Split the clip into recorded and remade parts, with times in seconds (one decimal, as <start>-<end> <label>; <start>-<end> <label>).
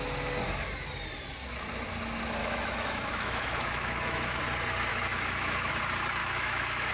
0.0-2.4 recorded; 2.4-4.4 remade; 4.4-4.9 recorded; 4.9-5.7 remade; 5.7-6.2 recorded; 6.2-6.9 remade